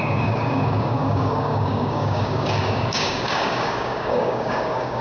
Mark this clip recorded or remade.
remade